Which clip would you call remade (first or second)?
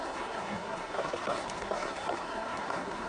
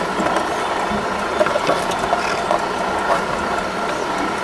first